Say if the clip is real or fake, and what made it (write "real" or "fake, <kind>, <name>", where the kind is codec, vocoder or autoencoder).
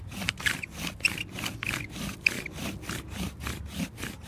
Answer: real